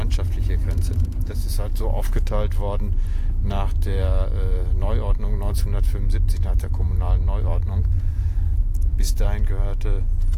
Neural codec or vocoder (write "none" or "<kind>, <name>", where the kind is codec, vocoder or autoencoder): none